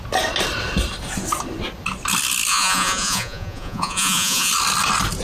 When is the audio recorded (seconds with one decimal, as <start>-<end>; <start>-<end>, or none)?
0.0-2.5; 4.5-5.2